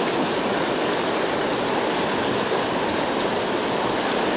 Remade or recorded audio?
recorded